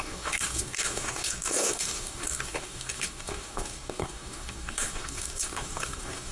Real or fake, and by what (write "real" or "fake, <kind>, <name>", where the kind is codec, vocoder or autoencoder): fake, codec, DAC